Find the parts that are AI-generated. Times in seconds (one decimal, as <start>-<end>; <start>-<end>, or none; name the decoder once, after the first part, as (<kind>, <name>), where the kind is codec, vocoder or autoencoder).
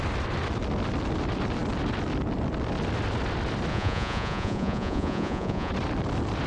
3.7-5.7 (vocoder, Vocos)